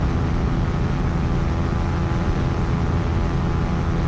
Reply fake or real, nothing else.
real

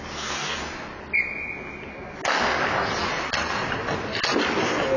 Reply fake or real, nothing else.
real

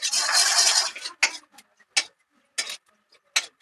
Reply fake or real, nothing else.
real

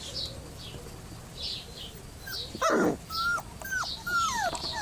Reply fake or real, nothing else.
real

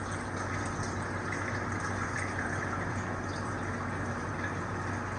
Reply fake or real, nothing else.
real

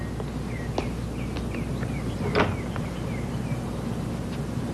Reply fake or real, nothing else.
real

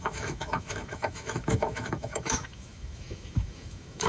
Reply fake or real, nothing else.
fake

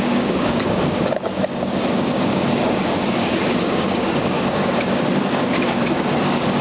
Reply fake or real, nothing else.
fake